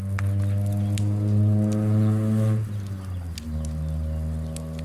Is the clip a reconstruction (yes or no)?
no